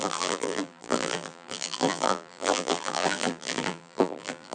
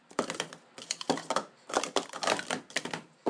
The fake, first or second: first